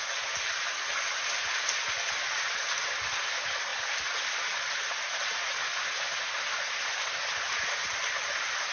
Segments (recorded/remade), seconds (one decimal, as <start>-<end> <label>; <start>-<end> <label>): 0.0-8.7 recorded